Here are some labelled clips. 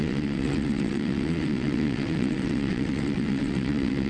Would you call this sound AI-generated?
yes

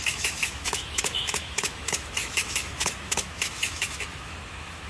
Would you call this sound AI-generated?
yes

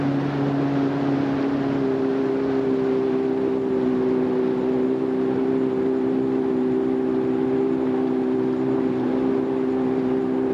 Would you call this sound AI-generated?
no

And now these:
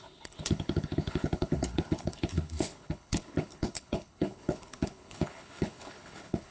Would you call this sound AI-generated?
yes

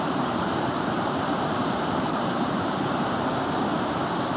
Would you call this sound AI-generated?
yes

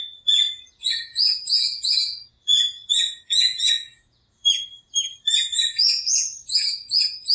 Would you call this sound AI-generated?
yes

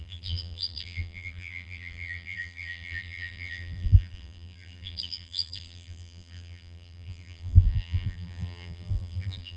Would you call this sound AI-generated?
yes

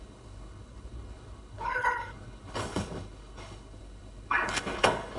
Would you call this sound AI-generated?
yes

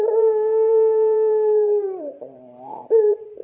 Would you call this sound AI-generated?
yes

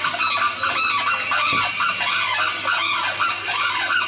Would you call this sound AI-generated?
no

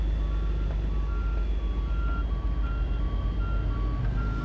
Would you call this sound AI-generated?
no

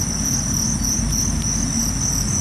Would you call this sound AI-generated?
no